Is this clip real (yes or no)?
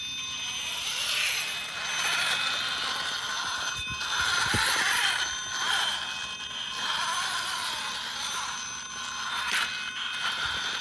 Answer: yes